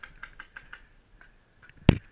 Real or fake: real